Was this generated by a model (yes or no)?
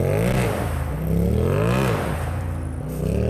no